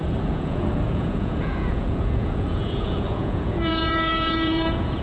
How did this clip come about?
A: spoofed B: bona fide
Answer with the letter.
A